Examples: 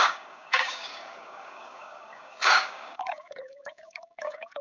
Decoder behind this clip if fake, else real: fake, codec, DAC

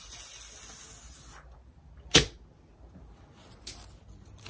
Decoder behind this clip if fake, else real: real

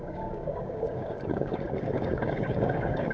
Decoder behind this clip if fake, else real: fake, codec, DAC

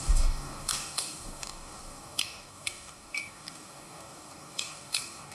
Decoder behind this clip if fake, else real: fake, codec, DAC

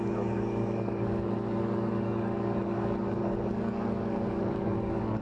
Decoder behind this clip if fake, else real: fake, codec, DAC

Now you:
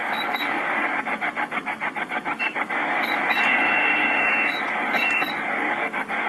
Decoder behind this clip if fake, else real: fake, codec, DAC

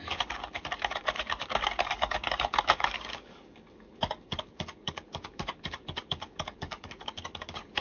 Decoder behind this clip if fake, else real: fake, codec, DAC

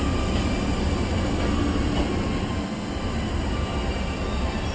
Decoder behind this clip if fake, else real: real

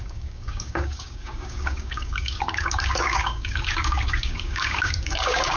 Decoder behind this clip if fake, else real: fake, codec, DAC